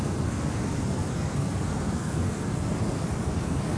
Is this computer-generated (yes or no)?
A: yes